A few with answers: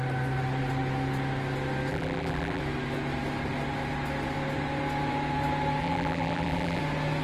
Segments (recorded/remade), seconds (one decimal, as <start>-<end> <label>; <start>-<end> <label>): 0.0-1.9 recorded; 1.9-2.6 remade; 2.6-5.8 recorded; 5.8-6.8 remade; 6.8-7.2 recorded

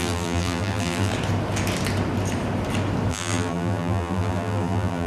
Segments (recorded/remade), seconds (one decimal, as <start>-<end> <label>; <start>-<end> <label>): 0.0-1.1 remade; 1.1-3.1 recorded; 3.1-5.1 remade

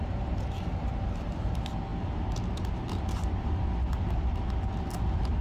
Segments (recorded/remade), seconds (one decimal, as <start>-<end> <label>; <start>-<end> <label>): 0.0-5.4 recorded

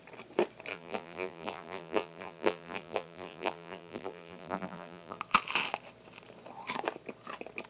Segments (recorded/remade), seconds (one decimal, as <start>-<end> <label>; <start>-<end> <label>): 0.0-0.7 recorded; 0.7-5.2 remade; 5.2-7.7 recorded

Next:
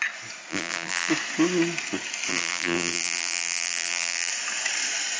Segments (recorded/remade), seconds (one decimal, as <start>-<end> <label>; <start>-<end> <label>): 0.0-0.5 recorded; 0.5-1.1 remade; 1.1-2.3 recorded; 2.3-4.3 remade; 4.3-5.2 recorded

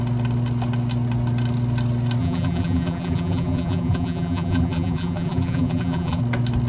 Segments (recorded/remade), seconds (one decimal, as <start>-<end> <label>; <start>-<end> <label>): 0.0-2.2 recorded; 2.2-6.2 remade; 6.2-6.7 recorded

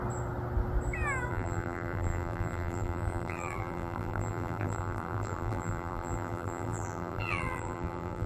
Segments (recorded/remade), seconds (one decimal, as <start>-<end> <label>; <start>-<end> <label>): 0.0-1.3 recorded; 1.3-8.3 remade